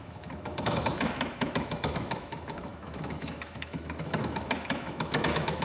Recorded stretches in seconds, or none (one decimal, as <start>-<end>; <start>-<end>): none